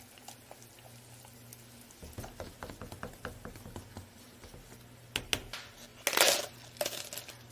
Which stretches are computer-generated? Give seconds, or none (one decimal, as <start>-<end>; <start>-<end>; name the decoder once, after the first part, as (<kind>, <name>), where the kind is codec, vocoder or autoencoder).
none